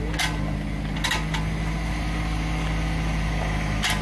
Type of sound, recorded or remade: recorded